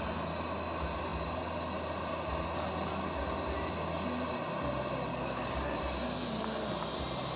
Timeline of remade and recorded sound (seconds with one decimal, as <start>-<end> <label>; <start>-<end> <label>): 0.0-5.1 recorded; 5.1-5.8 remade; 5.8-7.4 recorded